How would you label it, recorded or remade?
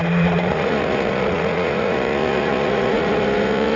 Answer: remade